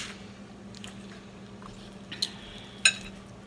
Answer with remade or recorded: recorded